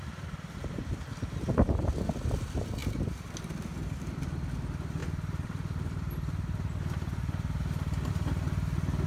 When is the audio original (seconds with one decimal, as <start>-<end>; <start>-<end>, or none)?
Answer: 0.0-2.8; 3.3-3.7; 4.2-5.0; 8.1-9.1